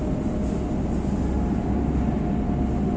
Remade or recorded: recorded